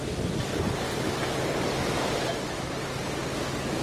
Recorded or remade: recorded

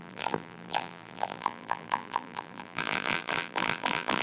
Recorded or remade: remade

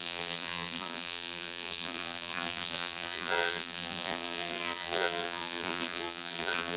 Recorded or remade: remade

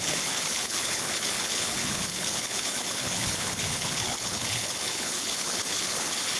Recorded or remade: remade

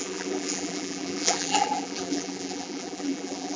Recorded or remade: remade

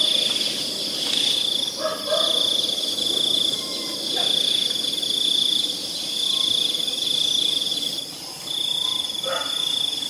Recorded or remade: recorded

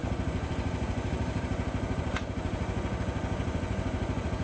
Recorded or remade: remade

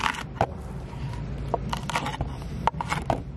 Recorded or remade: remade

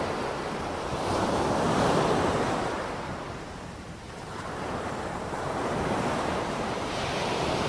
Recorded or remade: remade